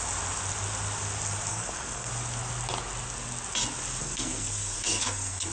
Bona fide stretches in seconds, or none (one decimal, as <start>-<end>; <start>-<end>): 0.0-1.5; 2.1-4.0